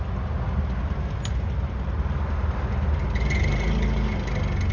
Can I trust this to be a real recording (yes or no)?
yes